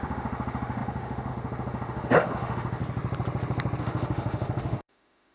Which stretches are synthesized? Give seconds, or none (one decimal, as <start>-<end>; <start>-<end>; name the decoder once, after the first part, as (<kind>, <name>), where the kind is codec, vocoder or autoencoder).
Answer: 0.0-2.8 (autoencoder, DAC-VAE); 3.8-5.3